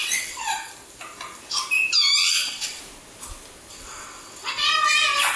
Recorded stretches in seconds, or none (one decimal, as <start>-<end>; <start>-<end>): 0.7-2.2; 2.8-3.7; 4.7-5.4